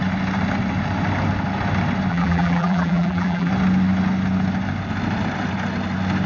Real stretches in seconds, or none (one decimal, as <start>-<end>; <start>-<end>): 0.0-2.1; 3.5-6.3